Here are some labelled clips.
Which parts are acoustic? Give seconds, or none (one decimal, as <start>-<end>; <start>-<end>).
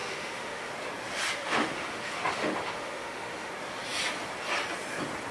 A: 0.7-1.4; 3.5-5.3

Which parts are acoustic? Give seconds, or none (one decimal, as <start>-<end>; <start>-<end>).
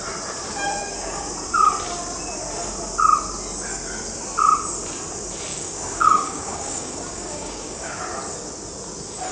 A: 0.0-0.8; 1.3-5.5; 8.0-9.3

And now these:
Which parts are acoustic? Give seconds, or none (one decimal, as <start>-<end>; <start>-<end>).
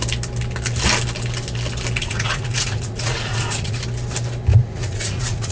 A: 0.0-2.0; 3.8-4.5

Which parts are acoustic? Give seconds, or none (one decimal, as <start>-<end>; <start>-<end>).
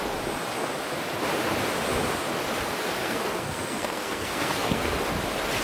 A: 0.0-3.0; 5.0-5.6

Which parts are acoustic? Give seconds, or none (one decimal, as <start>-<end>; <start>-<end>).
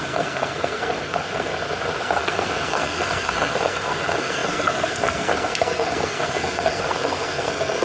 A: 1.5-2.0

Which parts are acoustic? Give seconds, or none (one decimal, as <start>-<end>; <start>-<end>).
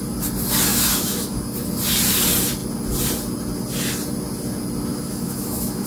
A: 0.0-0.7; 1.4-4.9